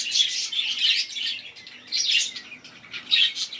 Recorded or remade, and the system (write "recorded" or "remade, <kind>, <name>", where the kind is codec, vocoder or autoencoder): recorded